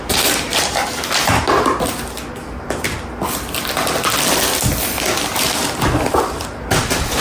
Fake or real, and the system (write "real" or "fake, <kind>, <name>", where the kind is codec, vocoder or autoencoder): real